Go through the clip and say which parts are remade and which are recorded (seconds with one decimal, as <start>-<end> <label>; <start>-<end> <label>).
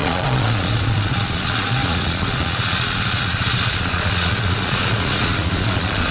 0.0-6.1 remade